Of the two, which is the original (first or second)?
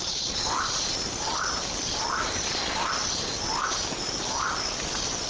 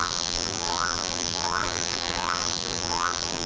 first